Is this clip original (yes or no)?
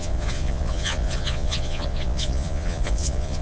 no